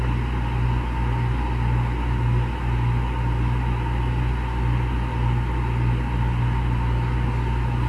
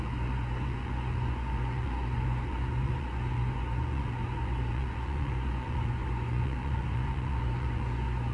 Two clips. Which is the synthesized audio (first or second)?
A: second